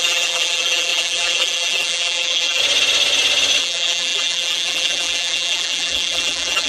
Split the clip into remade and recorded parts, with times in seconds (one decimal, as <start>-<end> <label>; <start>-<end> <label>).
0.0-2.6 remade; 2.6-3.6 recorded; 3.6-6.7 remade